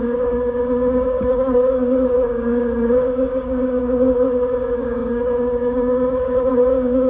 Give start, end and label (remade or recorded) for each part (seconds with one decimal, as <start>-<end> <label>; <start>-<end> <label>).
0.0-7.1 remade